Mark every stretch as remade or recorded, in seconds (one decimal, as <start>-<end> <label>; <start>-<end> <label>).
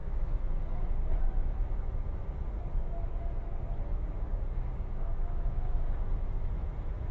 0.0-2.2 remade; 2.2-3.9 recorded; 3.9-7.1 remade